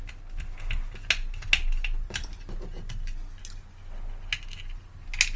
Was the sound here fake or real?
real